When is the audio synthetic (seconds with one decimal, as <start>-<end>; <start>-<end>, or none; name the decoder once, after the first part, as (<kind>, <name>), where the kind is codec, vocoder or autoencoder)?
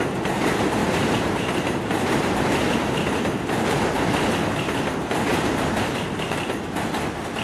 0.8-2.4 (vocoder, BigVGAN v2); 5.3-6.6